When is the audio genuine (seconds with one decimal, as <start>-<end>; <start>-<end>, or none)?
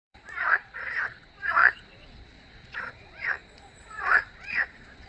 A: none